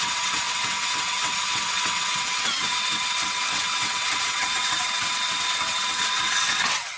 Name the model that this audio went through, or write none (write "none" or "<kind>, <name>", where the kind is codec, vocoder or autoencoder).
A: vocoder, WaveNeXt